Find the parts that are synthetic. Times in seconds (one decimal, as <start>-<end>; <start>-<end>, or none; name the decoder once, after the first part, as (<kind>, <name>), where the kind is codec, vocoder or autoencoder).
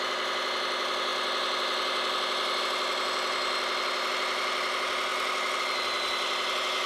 none